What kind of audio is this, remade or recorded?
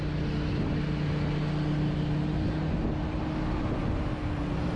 recorded